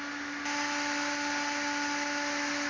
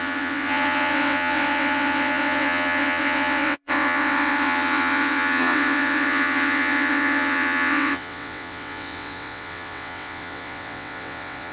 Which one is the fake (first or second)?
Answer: second